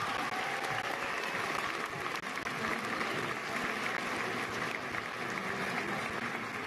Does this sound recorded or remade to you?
recorded